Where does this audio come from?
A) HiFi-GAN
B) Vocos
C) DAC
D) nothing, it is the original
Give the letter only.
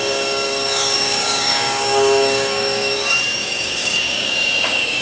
C